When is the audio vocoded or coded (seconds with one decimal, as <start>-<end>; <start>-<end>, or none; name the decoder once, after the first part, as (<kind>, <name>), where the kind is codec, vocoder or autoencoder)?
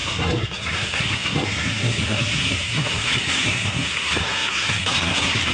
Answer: 0.0-5.5 (codec, SNAC)